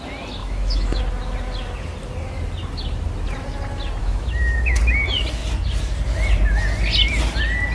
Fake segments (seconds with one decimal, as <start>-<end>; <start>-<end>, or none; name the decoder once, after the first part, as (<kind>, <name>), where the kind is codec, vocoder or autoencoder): 0.4-1.0 (autoencoder, DAC-VAE); 4.0-4.8